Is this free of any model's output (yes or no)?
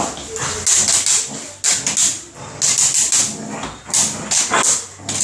yes